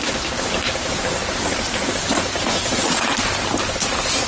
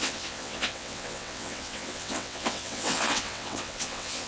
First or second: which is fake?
second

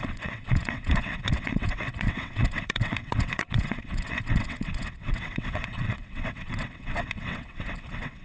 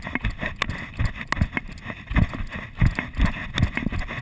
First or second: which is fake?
first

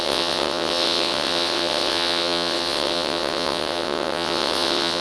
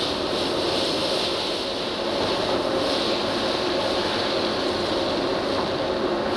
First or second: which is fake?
first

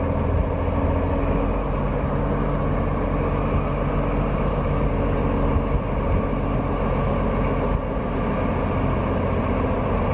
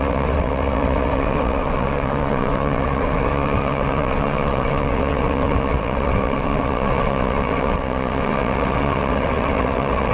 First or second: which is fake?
second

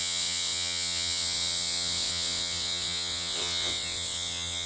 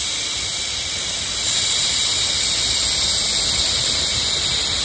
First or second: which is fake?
first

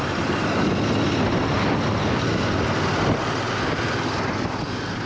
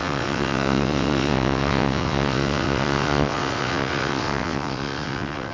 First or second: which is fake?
second